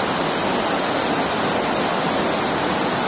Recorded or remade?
recorded